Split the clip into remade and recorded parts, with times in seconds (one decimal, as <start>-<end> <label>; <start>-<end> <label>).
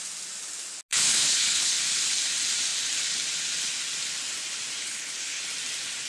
0.0-0.9 recorded; 0.9-1.7 remade; 1.7-4.8 recorded; 4.8-5.4 remade; 5.4-6.1 recorded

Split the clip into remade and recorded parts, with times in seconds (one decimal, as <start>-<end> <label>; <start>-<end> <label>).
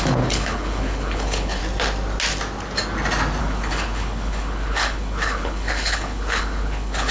0.0-1.6 remade; 1.6-3.4 recorded; 3.4-7.1 remade